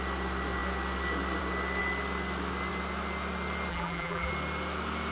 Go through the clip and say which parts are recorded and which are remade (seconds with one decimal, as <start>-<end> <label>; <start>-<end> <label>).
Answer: 0.0-3.7 recorded; 3.7-4.3 remade; 4.3-5.1 recorded